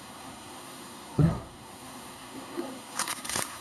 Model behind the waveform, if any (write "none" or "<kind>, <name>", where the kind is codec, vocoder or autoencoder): codec, SNAC